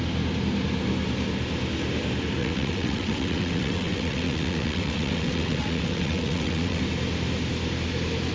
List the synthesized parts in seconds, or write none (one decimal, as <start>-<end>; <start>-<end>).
2.4-6.8